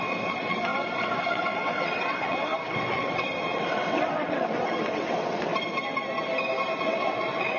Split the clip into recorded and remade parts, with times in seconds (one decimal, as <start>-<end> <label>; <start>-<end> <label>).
0.0-5.5 remade; 5.5-6.8 recorded; 6.8-7.6 remade

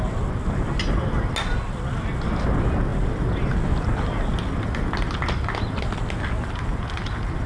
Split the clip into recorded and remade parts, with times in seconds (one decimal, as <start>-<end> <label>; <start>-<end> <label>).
0.0-7.5 recorded

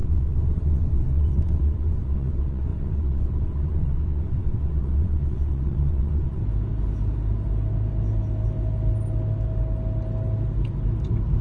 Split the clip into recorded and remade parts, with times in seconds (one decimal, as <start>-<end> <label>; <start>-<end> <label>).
0.0-6.4 remade; 6.4-11.4 recorded